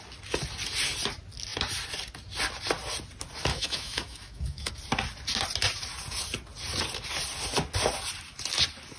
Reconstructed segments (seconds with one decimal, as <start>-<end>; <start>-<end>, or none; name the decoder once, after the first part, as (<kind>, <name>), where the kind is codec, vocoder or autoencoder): 3.5-4.7 (autoencoder, DAC-VAE)